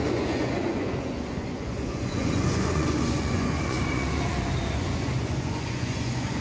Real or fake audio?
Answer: fake